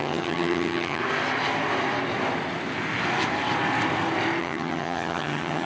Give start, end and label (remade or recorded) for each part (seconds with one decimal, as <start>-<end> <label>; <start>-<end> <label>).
0.0-1.0 remade; 1.0-4.4 recorded; 4.4-5.6 remade